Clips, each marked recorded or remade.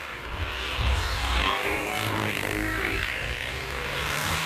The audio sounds remade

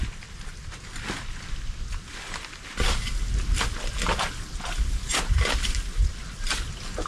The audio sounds recorded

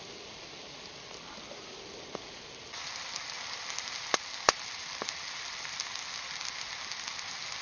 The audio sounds recorded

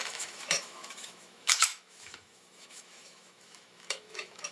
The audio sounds remade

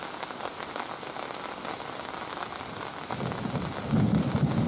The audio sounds recorded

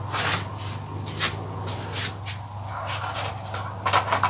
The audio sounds recorded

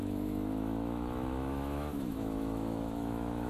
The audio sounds remade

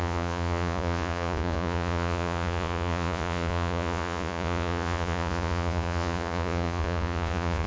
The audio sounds remade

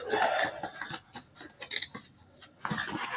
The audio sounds recorded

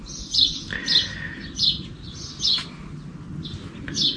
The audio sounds recorded